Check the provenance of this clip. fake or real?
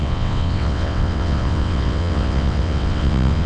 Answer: fake